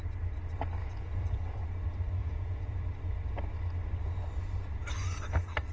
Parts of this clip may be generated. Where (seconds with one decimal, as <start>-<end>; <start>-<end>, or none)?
0.8-1.4; 2.2-2.8

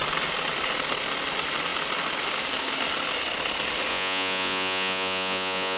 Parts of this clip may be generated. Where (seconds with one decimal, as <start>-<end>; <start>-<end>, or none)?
3.9-5.8